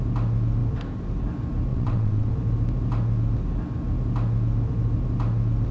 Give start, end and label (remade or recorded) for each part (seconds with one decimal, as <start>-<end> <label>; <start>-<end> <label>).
0.0-1.7 recorded; 1.7-2.3 remade; 2.3-5.7 recorded